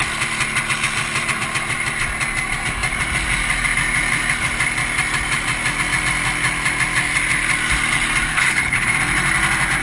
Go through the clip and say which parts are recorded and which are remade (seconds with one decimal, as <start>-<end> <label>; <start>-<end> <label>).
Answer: 0.0-8.3 recorded; 8.3-8.9 remade; 8.9-9.8 recorded